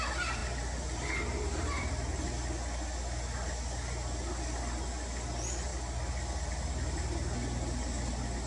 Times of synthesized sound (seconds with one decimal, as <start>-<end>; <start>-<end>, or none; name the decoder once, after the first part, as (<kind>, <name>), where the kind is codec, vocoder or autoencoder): 0.4-1.9 (vocoder, BigVGAN v2)